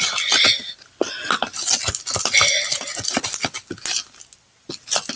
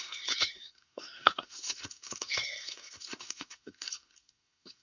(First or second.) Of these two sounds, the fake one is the second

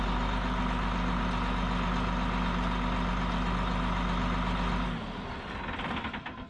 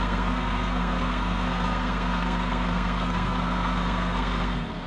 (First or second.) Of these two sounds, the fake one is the second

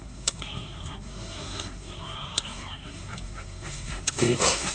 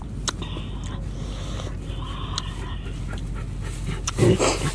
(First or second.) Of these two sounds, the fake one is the first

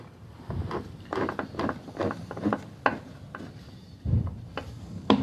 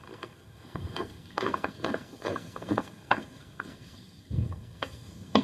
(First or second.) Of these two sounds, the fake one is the second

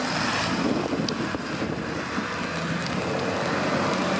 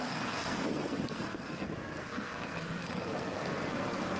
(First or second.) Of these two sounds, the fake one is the second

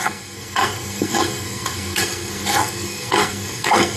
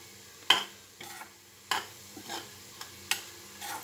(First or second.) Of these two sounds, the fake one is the first